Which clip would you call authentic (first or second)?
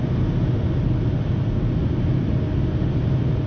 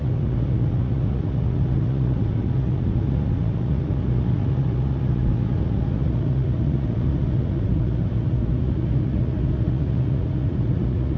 first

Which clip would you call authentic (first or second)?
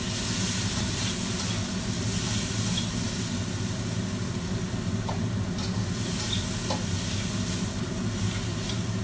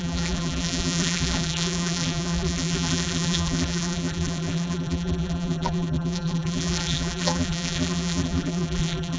first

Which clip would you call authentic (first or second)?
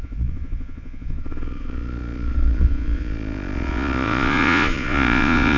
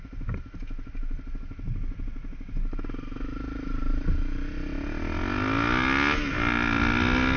second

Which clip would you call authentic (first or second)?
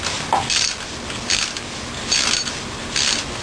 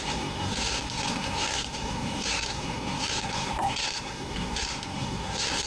first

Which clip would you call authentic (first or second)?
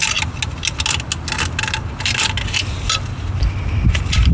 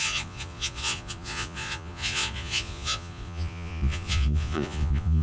first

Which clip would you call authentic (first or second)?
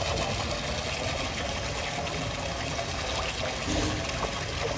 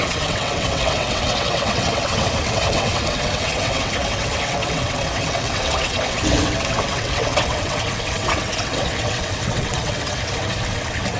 first